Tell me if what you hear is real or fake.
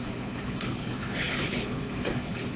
fake